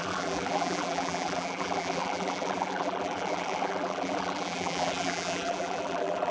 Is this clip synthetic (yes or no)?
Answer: yes